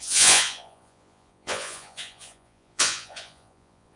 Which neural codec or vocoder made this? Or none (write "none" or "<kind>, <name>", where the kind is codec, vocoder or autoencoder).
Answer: vocoder, Vocos